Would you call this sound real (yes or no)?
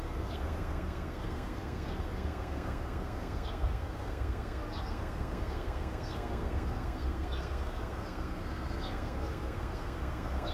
no